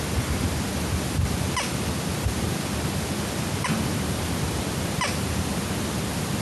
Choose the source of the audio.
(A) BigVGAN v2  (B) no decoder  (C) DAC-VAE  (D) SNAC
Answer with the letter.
B